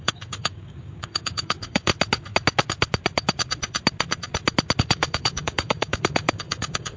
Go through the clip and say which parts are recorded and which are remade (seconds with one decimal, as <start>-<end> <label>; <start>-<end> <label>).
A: 0.0-1.9 remade; 1.9-4.8 recorded; 4.8-7.0 remade

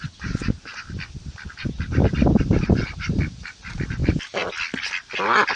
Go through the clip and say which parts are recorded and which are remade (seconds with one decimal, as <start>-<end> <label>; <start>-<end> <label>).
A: 0.0-0.7 remade; 0.7-1.5 recorded; 1.5-4.0 remade; 4.0-5.6 recorded

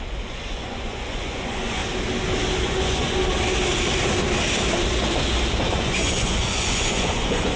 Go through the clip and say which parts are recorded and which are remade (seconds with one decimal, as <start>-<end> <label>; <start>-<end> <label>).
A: 0.0-1.8 remade; 1.8-2.6 recorded; 2.6-3.2 remade; 3.2-5.7 recorded; 5.7-7.6 remade